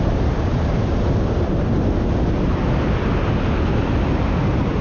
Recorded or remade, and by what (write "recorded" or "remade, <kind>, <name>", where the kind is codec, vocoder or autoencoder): recorded